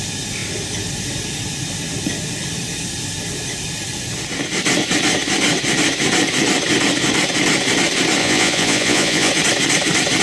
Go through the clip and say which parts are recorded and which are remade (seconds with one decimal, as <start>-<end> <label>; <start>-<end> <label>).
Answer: 0.0-8.2 recorded; 8.2-9.3 remade; 9.3-10.2 recorded